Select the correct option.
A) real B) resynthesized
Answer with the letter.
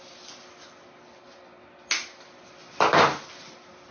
A